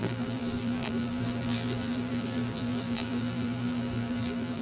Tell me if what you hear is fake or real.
fake